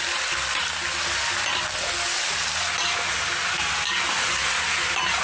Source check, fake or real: real